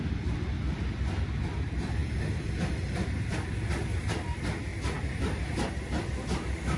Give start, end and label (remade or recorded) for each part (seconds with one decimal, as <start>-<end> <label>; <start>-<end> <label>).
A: 0.0-6.8 recorded

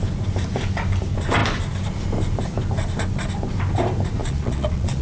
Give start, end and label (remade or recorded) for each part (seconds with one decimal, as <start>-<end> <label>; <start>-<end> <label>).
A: 0.0-4.2 recorded; 4.2-5.0 remade

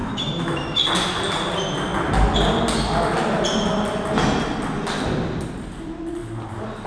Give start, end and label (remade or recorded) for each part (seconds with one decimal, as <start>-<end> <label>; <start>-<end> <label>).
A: 0.0-0.9 remade; 0.9-6.9 recorded